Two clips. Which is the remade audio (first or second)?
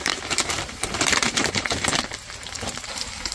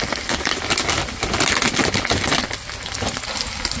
first